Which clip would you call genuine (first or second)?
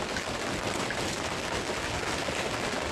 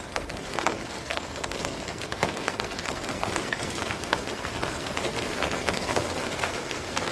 first